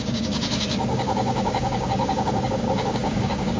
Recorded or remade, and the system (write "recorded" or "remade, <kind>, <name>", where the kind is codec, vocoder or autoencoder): remade, codec, DAC